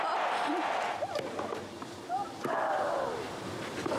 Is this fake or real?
real